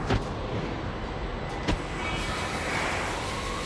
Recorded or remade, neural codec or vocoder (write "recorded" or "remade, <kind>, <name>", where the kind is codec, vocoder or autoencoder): recorded